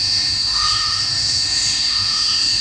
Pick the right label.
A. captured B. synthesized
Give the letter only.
B